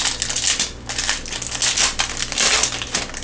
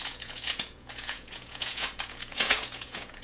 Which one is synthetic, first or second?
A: second